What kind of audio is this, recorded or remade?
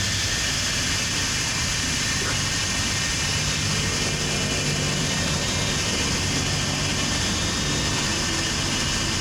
recorded